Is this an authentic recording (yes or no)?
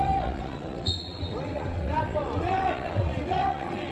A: no